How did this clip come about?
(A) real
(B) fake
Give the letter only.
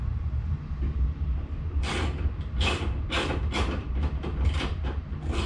A